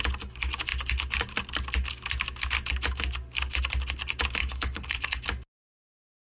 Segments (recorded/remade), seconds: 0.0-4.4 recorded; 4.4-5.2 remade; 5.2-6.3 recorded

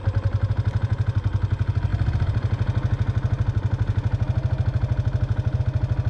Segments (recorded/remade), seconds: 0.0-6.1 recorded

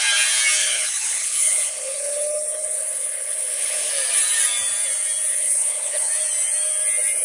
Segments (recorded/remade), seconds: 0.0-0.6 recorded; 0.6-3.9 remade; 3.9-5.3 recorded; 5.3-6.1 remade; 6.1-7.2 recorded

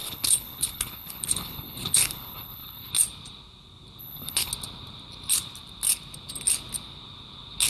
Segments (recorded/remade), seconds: 0.0-2.9 remade; 2.9-4.0 recorded; 4.0-4.5 remade; 4.5-7.7 recorded

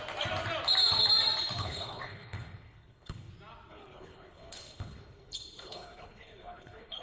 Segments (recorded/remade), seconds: 0.0-1.6 recorded; 1.6-3.3 remade; 3.3-3.7 recorded; 3.7-7.0 remade

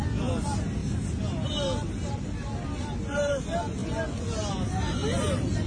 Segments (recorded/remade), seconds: 0.0-5.7 recorded